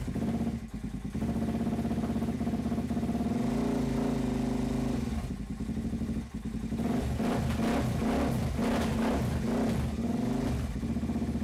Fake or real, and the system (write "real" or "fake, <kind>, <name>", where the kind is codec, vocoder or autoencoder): real